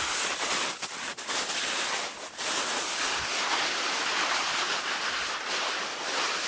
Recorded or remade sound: recorded